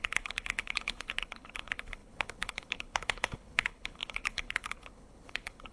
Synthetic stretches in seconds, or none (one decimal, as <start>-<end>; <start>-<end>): 0.0-5.7